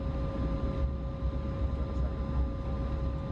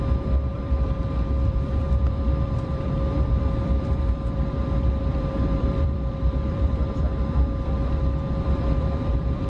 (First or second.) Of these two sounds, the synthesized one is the second